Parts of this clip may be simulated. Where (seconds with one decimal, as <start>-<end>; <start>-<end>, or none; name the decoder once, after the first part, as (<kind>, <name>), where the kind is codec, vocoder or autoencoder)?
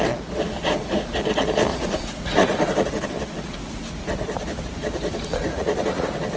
1.7-2.6 (vocoder, Vocos); 5.5-6.0